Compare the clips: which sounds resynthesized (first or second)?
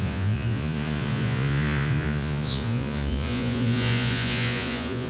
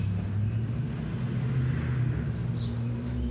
first